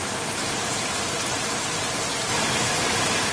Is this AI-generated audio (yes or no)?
yes